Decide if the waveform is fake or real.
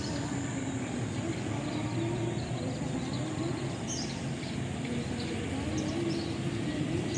real